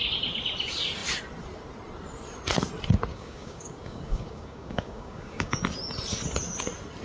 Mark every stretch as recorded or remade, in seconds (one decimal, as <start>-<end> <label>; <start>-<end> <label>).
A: 0.0-3.1 recorded; 3.1-5.6 remade; 5.6-7.0 recorded